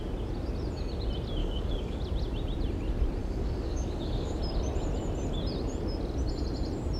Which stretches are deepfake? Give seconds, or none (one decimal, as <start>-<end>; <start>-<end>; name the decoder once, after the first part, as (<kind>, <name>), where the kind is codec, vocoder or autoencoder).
1.4-2.0 (codec, DAC); 3.2-4.4